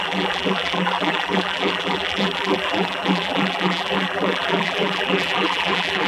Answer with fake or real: fake